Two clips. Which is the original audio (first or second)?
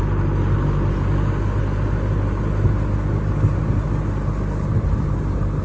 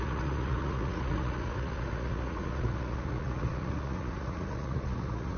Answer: first